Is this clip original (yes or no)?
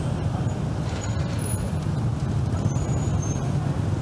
yes